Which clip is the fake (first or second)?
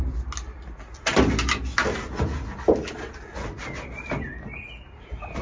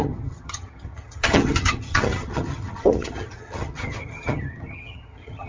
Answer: second